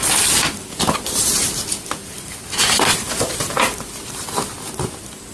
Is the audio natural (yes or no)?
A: yes